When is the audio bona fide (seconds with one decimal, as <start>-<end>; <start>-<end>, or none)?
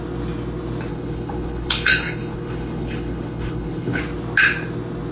0.0-0.9; 4.0-5.1